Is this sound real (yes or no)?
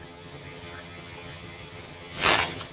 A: no